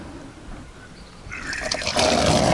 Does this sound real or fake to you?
real